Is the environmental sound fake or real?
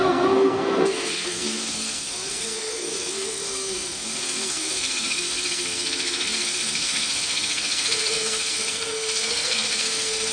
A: fake